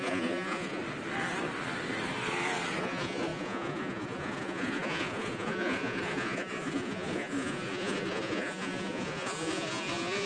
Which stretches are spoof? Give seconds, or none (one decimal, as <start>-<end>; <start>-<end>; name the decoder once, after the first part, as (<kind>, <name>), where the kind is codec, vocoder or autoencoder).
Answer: 0.0-0.8 (vocoder, Vocos); 2.8-10.3